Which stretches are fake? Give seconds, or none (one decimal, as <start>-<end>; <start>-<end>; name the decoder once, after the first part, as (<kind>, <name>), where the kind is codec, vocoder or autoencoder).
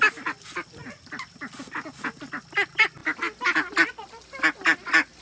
none